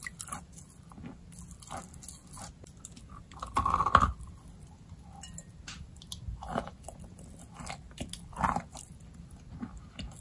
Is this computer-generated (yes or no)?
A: no